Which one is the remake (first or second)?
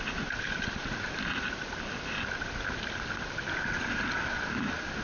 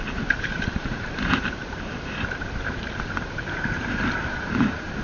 second